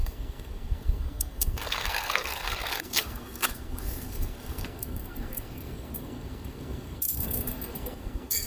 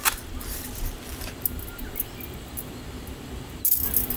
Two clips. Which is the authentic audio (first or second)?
second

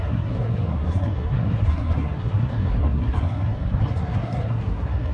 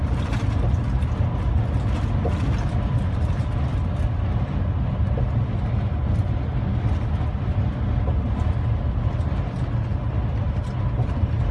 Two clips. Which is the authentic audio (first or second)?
second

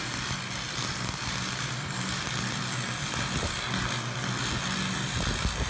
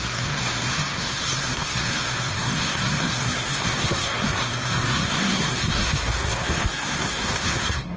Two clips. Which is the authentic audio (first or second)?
first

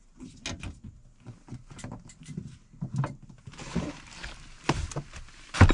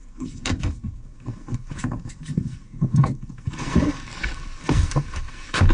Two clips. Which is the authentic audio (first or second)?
first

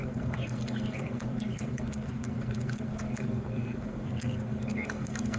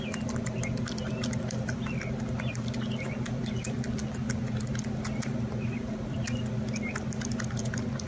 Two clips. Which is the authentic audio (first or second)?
second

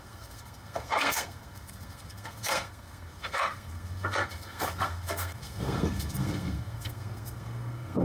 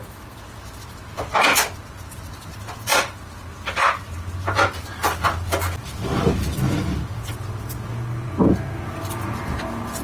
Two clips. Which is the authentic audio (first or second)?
second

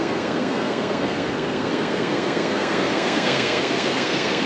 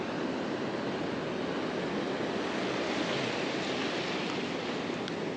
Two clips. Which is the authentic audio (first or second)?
second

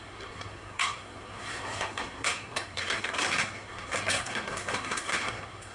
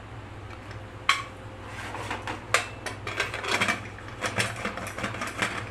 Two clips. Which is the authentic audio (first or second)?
second